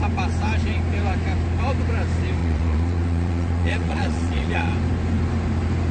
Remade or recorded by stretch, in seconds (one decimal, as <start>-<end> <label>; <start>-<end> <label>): 0.0-2.4 recorded; 2.4-4.7 remade; 4.7-5.9 recorded